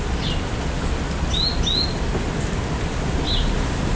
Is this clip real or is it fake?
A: real